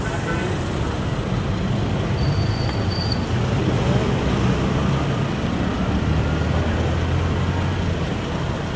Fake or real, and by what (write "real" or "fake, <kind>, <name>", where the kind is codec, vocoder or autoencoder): real